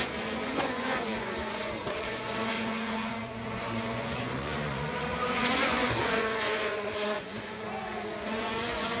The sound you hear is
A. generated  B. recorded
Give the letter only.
A